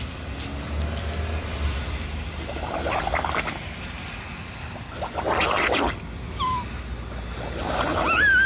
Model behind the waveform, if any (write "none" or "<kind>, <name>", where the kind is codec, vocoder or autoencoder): none